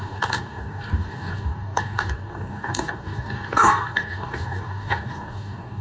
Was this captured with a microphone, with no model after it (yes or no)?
no